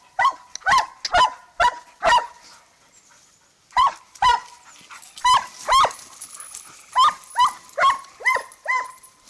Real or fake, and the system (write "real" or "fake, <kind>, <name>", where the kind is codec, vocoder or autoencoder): real